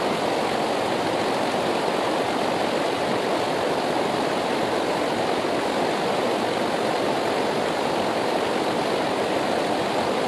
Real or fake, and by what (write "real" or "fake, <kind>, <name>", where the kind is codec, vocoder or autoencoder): real